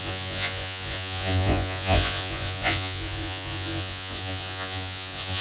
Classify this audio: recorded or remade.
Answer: remade